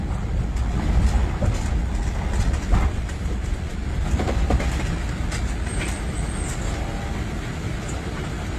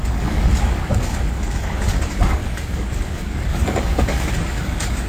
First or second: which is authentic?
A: first